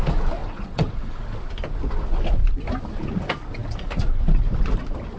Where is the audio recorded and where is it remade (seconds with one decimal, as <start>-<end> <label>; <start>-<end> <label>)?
0.0-0.4 recorded; 0.4-1.2 remade; 1.2-5.2 recorded